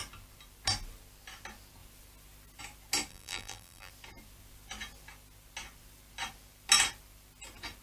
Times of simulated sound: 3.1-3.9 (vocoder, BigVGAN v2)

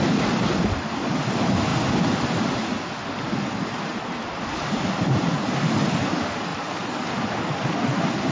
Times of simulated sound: 6.5-7.4 (vocoder, BigVGAN v2)

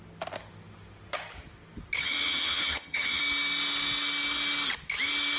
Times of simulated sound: 2.0-3.2 (vocoder, HiFi-GAN)

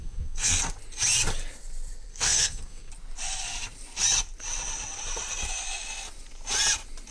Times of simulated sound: 0.0-0.7 (codec, SNAC); 2.1-2.9

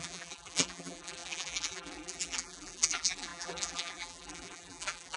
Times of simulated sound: 0.0-5.2 (vocoder, BigVGAN v2)

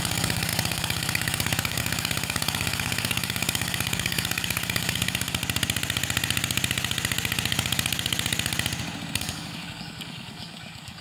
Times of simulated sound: 0.0-5.4 (codec, DAC); 9.2-11.0